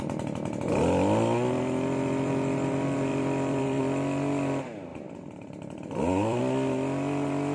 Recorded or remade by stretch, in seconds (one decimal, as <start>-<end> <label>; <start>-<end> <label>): 0.0-3.1 recorded; 3.1-3.8 remade; 3.8-4.9 recorded; 4.9-6.4 remade; 6.4-7.5 recorded